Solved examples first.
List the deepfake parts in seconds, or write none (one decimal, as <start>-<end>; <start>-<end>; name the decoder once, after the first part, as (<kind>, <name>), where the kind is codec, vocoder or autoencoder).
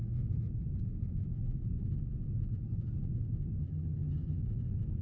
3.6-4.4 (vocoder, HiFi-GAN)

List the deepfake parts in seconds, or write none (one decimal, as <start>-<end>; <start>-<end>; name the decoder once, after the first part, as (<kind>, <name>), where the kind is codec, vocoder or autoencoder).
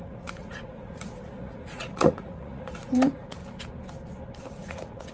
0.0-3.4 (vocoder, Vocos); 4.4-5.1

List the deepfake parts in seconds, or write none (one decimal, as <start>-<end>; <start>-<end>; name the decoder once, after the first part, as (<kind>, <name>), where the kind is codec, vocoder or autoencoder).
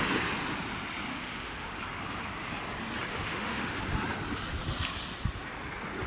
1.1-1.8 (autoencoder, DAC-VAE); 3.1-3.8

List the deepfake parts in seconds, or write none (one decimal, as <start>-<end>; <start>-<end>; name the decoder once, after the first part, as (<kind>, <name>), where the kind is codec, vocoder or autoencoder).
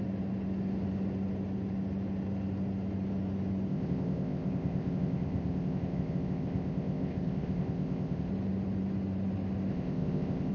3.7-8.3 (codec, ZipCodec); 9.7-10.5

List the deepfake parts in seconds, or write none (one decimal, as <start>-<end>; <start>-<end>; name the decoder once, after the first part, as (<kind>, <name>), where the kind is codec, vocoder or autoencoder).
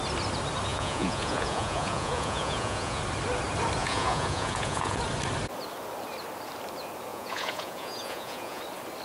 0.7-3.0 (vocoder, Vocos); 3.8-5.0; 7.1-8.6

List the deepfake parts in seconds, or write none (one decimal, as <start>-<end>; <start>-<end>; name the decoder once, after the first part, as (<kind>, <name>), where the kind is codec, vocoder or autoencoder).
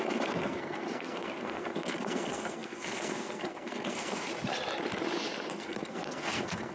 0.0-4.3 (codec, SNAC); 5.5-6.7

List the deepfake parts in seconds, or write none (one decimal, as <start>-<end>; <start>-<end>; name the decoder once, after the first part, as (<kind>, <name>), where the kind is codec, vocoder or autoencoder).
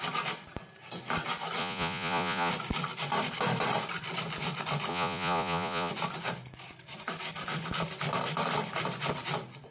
1.6-2.5 (vocoder, Vocos); 4.9-5.9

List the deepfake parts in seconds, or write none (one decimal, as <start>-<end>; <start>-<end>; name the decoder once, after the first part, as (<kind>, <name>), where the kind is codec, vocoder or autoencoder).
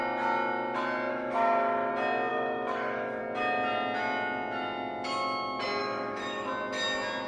1.1-1.9 (autoencoder, DAC-VAE); 2.3-3.2; 5.8-6.5